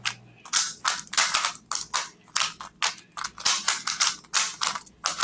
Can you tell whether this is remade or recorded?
recorded